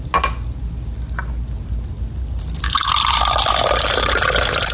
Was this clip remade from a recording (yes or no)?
no